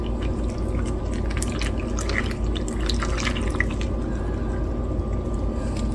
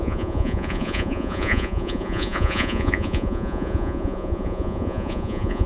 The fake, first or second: second